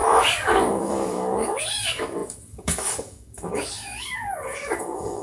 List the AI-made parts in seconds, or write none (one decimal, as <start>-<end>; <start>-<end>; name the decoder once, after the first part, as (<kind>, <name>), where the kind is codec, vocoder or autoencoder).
0.0-5.2 (codec, DAC)

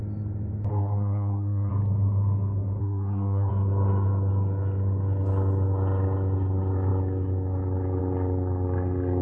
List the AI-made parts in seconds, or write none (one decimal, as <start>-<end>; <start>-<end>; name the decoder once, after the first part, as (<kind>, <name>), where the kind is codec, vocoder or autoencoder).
0.7-1.7 (codec, SNAC); 2.8-3.5

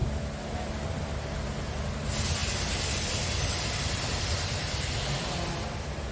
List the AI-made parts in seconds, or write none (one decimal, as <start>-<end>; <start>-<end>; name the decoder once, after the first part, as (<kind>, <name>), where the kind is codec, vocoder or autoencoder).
none

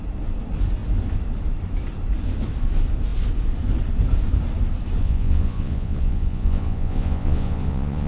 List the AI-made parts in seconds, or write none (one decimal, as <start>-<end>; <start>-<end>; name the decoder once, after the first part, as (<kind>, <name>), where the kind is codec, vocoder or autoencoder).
5.0-8.1 (vocoder, Vocos)

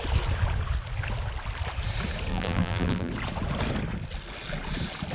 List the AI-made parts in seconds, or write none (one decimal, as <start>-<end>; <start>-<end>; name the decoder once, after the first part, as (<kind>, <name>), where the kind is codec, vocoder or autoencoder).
2.3-3.1 (vocoder, BigVGAN v2)

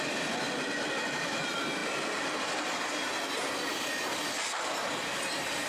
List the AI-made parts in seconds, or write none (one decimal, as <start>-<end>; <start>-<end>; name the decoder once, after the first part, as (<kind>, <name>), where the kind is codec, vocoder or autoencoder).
none